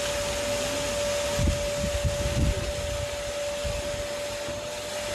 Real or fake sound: real